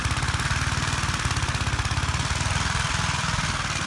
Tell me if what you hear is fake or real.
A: real